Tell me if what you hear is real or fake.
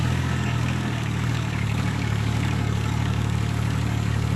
fake